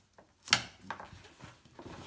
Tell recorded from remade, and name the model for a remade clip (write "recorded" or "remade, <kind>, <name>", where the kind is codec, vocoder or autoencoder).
recorded